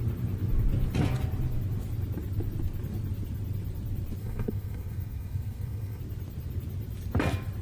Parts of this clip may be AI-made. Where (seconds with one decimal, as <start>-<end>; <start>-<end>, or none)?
4.2-6.0

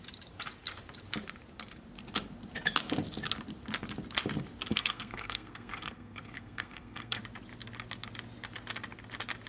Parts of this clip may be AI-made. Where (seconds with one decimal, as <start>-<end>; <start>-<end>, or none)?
4.7-7.2